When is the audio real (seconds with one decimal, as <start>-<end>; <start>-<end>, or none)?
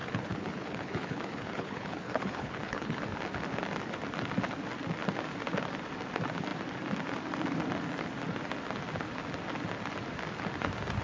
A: 3.0-11.0